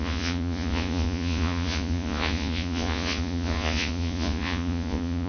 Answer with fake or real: fake